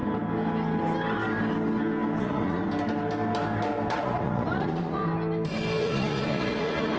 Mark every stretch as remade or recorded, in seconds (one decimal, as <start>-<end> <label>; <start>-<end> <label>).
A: 0.0-2.2 recorded; 2.2-2.6 remade; 2.6-3.9 recorded; 3.9-5.0 remade; 5.0-5.8 recorded; 5.8-7.0 remade